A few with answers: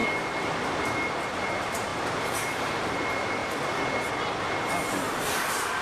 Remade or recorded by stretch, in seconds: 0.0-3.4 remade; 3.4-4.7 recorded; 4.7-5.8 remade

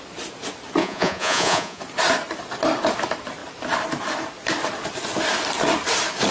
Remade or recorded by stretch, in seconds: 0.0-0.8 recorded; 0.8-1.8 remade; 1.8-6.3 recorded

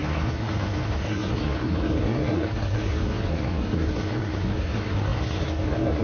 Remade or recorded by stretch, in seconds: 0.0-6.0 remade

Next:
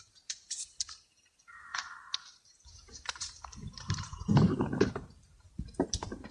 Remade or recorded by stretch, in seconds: 0.0-6.3 remade

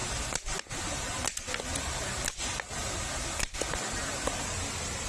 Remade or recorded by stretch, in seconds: 0.0-5.1 recorded

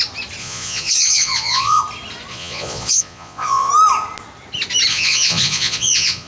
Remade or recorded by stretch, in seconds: 0.0-0.4 recorded; 0.4-1.8 remade; 1.8-2.3 recorded; 2.3-3.7 remade; 3.7-4.9 recorded; 4.9-6.3 remade

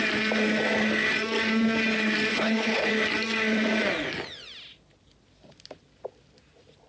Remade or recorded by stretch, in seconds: 0.0-2.3 recorded; 2.3-2.9 remade; 2.9-6.9 recorded